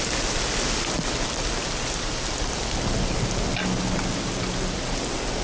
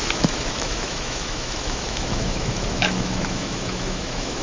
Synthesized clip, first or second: second